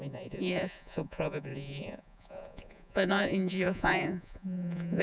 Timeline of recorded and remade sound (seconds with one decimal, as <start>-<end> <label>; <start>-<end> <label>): 0.0-5.0 remade